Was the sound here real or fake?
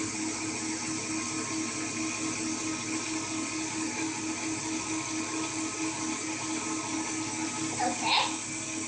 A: real